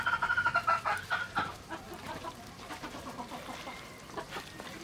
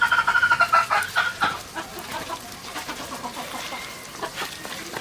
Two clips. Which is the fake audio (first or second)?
first